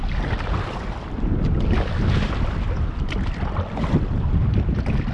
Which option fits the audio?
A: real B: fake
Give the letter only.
A